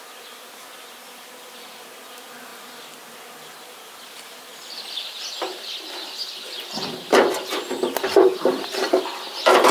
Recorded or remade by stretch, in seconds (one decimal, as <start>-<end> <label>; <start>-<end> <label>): 0.0-9.7 recorded